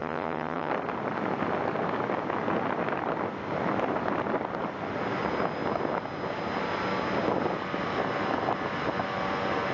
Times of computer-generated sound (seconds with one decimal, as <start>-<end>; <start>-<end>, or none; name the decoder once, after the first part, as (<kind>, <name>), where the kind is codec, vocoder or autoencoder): 0.0-0.7 (vocoder, HiFi-GAN)